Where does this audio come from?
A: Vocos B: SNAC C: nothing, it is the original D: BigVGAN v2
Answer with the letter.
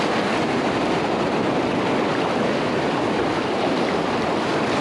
C